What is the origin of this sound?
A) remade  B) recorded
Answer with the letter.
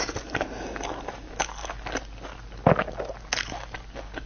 B